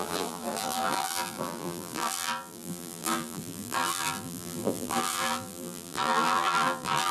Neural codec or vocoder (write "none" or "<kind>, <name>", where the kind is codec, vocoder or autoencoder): vocoder, BigVGAN v2